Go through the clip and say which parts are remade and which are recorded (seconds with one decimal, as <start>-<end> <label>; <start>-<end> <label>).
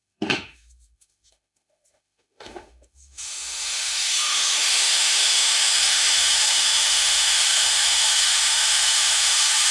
0.0-9.7 remade